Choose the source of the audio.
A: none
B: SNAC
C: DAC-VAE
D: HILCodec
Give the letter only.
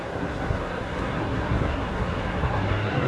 B